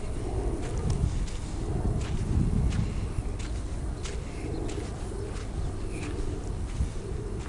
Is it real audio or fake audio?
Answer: real